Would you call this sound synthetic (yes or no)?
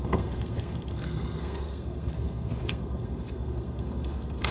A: yes